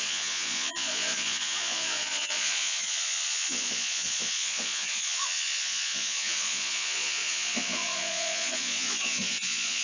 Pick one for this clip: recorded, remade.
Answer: remade